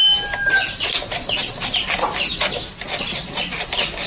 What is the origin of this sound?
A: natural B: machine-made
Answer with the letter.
A